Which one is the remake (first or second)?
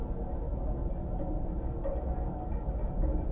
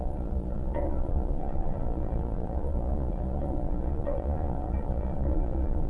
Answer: second